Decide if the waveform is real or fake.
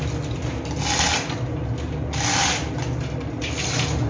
real